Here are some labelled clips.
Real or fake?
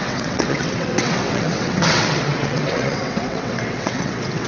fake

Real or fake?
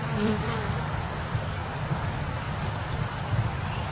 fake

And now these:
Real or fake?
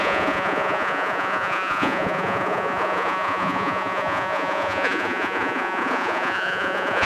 fake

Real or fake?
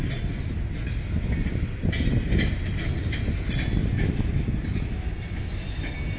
real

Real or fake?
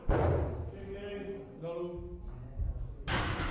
real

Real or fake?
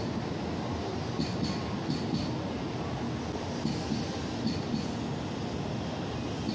real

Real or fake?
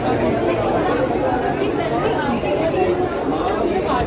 real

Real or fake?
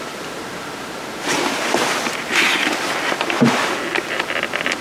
fake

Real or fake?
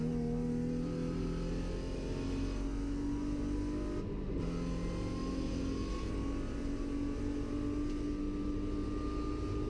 real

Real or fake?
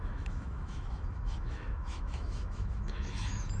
fake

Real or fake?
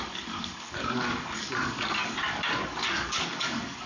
fake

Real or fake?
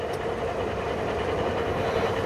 fake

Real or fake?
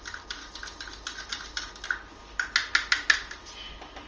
real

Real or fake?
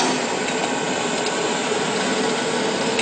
real